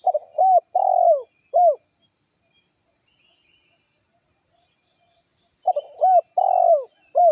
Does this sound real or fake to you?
real